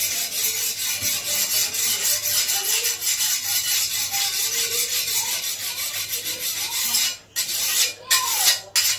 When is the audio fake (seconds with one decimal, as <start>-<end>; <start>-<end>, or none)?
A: 3.1-4.7; 5.6-8.4